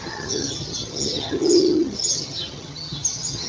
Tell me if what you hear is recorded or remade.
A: remade